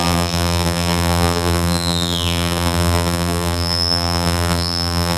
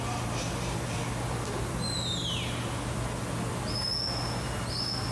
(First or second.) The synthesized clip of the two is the first